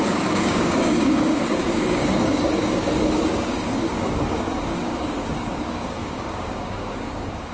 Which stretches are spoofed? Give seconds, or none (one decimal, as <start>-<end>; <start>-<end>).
0.0-7.5